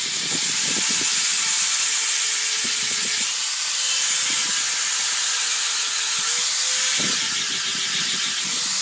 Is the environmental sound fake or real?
real